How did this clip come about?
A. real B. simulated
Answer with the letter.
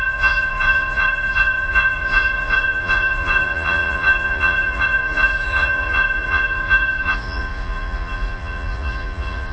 B